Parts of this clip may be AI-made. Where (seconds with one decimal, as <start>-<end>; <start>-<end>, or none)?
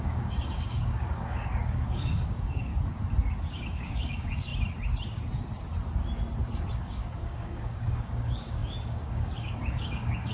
0.0-2.7; 3.4-4.5; 6.7-10.3